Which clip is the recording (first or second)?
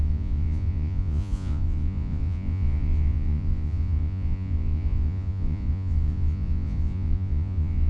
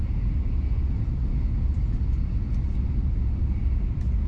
second